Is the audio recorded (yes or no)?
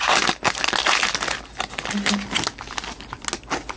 yes